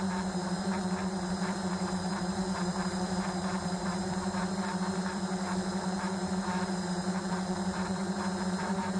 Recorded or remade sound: remade